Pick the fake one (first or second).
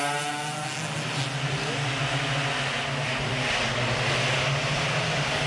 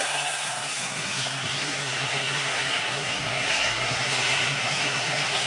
second